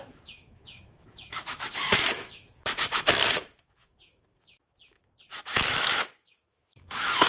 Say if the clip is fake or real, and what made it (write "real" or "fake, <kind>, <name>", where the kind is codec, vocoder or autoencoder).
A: fake, autoencoder, DAC-VAE